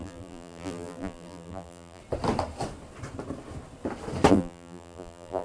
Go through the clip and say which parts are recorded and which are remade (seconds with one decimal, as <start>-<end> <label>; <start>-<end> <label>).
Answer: 0.0-2.0 remade; 2.0-4.3 recorded; 4.3-5.4 remade